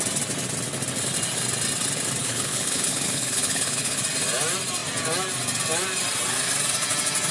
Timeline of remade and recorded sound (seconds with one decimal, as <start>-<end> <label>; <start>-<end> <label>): 0.0-2.2 recorded; 2.2-4.0 remade; 4.0-7.3 recorded